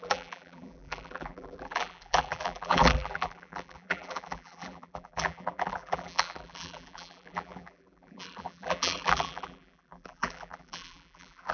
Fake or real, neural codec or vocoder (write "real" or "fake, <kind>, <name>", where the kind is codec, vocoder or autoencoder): fake, vocoder, BigVGAN v2